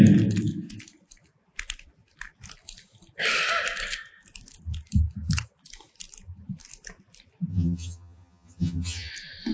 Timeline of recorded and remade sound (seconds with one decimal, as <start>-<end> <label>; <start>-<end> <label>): 0.0-7.5 recorded; 7.5-9.1 remade; 9.1-9.5 recorded